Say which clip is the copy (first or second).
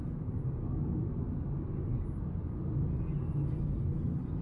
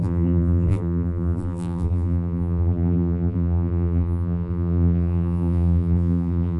second